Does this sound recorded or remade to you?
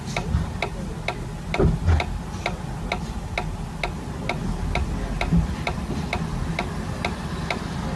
recorded